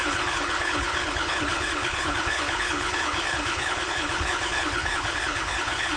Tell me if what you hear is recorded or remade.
remade